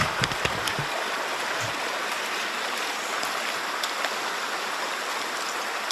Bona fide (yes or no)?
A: yes